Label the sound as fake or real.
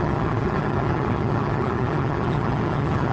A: fake